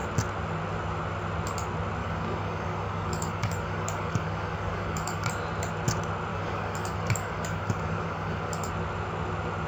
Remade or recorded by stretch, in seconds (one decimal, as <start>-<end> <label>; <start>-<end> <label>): 0.0-2.0 recorded; 2.0-5.3 remade; 5.3-6.3 recorded; 6.3-8.7 remade; 8.7-9.7 recorded